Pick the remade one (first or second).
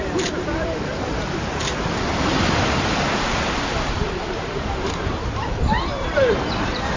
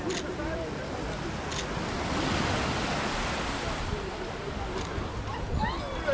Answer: first